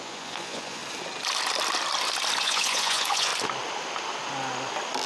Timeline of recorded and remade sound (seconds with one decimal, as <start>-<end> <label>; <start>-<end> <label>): 0.0-0.8 remade; 0.8-2.4 recorded; 2.4-3.3 remade; 3.3-5.1 recorded